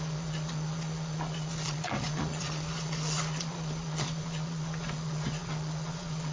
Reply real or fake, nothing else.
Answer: fake